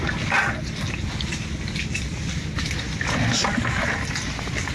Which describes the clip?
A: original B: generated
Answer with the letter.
A